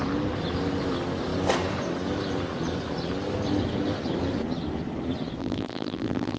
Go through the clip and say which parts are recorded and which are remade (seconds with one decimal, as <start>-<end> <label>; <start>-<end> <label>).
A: 0.0-5.4 recorded; 5.4-6.4 remade